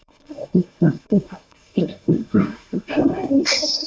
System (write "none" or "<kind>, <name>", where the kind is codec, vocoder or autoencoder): codec, SNAC